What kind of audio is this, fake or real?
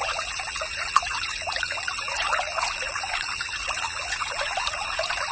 fake